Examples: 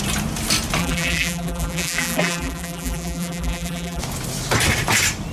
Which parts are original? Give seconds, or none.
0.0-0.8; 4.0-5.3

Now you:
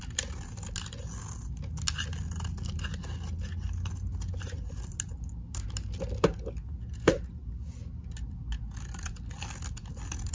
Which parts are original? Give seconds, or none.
0.0-10.3